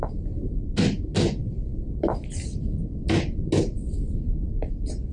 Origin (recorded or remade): recorded